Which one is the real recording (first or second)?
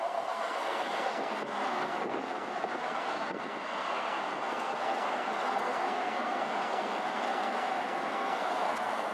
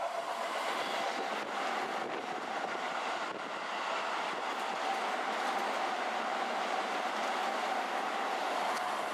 second